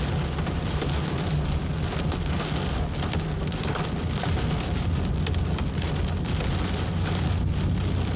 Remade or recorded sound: recorded